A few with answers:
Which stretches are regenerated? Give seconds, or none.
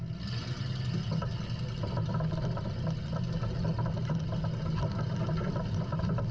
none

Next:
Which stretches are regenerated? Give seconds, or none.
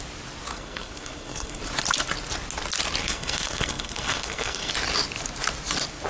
0.5-1.6 (codec, SNAC); 3.0-4.7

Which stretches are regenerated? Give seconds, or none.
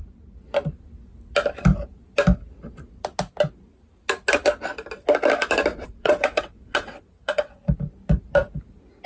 5.7-7.6 (vocoder, WaveNeXt)